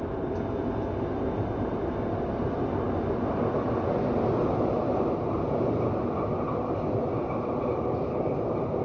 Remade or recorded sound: recorded